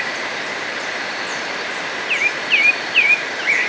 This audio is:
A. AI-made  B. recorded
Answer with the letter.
A